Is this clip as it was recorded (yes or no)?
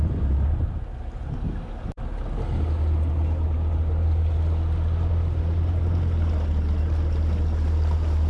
yes